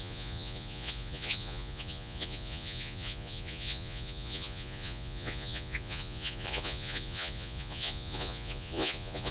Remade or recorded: remade